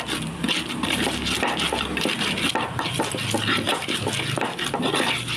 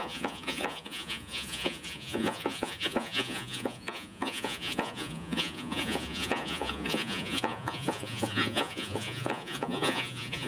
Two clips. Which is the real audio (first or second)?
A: first